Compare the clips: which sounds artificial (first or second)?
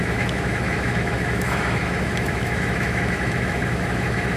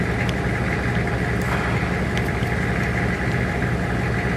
first